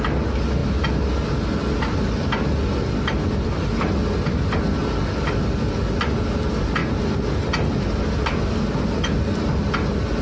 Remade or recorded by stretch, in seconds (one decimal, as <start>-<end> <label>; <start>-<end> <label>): 0.0-10.2 recorded